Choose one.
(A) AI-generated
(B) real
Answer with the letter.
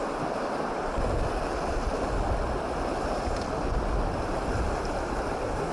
B